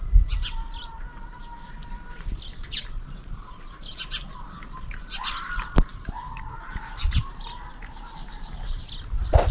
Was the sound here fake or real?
real